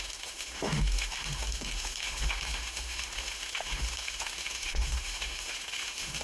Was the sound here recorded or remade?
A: remade